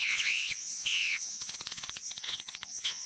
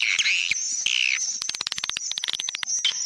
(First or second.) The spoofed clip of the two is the first